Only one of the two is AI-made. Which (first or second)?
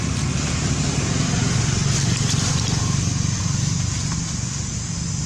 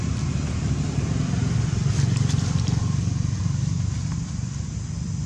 second